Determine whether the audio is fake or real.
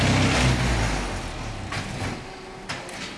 real